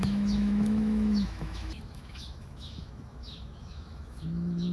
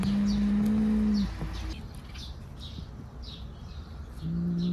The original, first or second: second